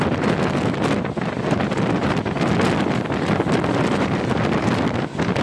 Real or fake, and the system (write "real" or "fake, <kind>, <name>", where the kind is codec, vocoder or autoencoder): real